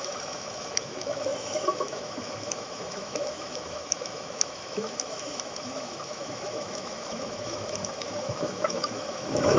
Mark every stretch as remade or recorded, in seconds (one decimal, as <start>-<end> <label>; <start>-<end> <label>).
0.0-9.6 remade